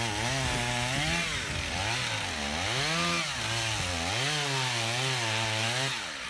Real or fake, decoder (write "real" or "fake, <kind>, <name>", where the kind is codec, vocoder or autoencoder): real